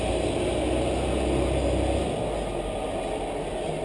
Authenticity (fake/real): real